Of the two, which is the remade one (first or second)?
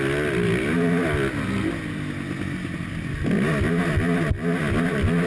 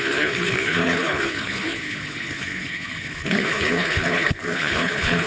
second